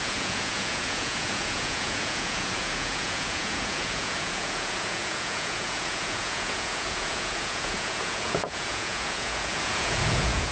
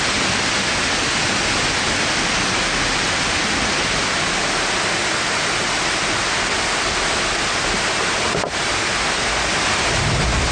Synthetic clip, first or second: first